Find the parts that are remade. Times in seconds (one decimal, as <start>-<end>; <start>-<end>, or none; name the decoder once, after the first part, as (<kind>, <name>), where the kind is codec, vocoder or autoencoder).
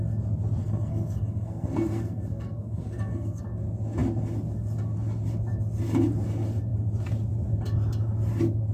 0.6-3.4 (codec, SNAC)